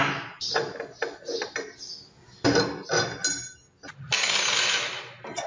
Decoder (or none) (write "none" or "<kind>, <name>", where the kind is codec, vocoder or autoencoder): none